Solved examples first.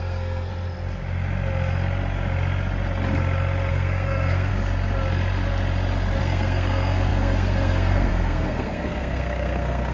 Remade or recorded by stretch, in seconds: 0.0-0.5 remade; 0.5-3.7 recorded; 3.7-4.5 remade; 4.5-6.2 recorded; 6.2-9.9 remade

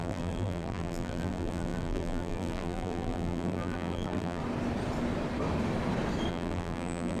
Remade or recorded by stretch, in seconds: 0.0-4.4 remade; 4.4-6.3 recorded; 6.3-7.2 remade

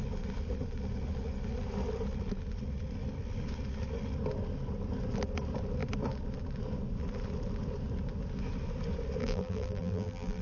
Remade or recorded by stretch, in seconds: 0.0-9.2 recorded; 9.2-10.4 remade

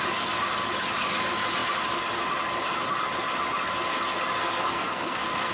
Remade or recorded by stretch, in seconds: 0.0-4.4 recorded; 4.4-5.5 remade

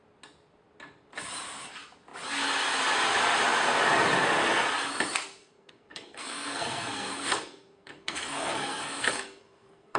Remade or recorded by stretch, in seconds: 0.0-5.4 recorded; 5.4-10.0 remade

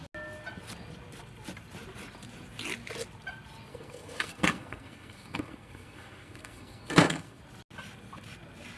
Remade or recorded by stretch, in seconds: 0.0-3.7 recorded; 3.7-7.4 remade; 7.4-8.8 recorded